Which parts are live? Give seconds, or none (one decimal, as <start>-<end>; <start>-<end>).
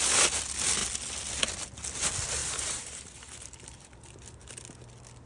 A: 0.0-2.4; 3.9-5.3